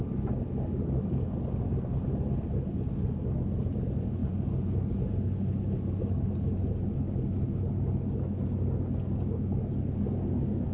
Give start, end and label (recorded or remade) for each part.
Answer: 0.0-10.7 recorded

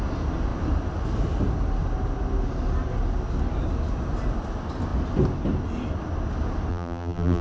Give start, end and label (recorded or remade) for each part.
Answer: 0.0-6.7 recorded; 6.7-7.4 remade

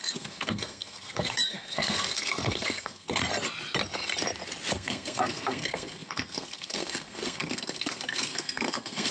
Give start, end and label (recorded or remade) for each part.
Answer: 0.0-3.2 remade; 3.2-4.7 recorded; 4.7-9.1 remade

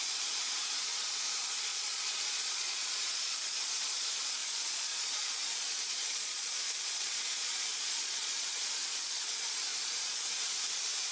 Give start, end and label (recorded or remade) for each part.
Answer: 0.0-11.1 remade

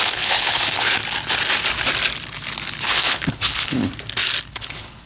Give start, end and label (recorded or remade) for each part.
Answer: 0.0-1.0 remade; 1.0-2.8 recorded; 2.8-3.9 remade; 3.9-4.5 recorded; 4.5-5.1 remade

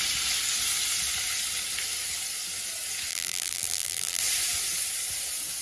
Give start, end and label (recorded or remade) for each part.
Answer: 0.0-3.1 recorded; 3.1-4.2 remade; 4.2-5.6 recorded